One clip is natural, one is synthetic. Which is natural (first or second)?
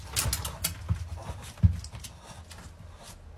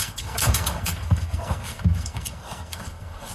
first